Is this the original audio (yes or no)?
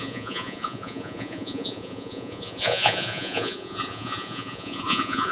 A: no